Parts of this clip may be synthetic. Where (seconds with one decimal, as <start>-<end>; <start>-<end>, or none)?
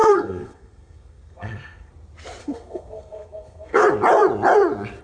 0.0-1.9; 2.4-3.8